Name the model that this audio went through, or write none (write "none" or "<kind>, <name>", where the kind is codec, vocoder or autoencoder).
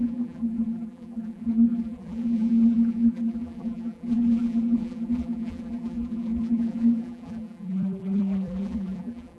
vocoder, BigVGAN v2